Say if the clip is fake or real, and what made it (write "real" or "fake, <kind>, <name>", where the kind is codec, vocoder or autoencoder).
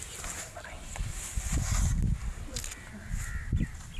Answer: real